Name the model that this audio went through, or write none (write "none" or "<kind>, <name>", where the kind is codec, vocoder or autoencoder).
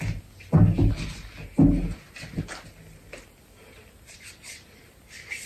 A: none